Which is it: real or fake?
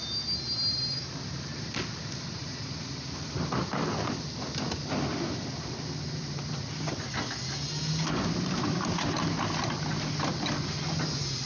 real